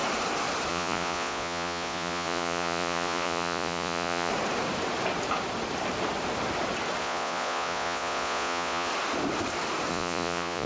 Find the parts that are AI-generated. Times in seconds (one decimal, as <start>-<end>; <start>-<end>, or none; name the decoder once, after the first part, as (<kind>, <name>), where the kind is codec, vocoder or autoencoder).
0.7-4.3 (vocoder, Vocos); 7.0-8.9; 9.9-10.7